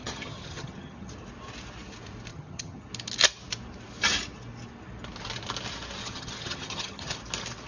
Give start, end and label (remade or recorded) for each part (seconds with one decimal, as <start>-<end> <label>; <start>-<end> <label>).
0.0-1.1 remade; 1.1-2.3 recorded; 2.3-2.9 remade; 2.9-6.0 recorded; 6.0-7.2 remade; 7.2-7.7 recorded